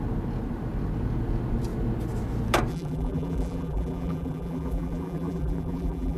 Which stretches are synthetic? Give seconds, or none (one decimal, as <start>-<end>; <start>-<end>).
2.7-6.2